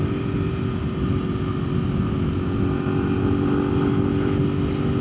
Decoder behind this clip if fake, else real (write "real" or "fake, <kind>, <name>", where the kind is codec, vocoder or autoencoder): real